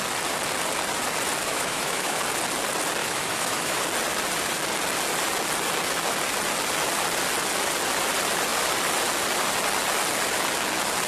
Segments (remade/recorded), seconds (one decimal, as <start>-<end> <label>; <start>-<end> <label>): 0.0-1.5 recorded; 1.5-2.2 remade; 2.2-3.0 recorded; 3.0-3.8 remade; 3.8-11.1 recorded